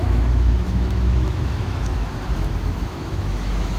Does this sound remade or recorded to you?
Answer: remade